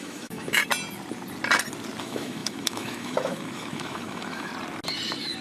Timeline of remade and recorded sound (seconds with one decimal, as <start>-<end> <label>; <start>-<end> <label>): 0.0-0.6 remade; 0.6-2.0 recorded; 2.0-4.5 remade; 4.5-5.4 recorded